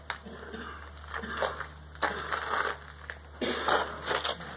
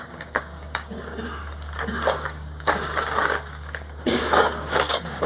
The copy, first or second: second